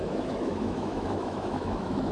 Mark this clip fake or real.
fake